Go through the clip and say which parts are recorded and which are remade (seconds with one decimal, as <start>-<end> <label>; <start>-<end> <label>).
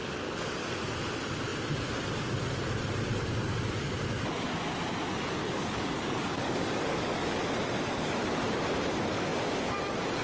0.0-0.7 remade; 0.7-5.4 recorded; 5.4-7.4 remade; 7.4-10.2 recorded